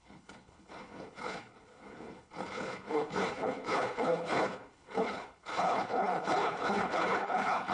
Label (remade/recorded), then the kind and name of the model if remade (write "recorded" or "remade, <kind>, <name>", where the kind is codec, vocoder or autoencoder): remade, codec, HILCodec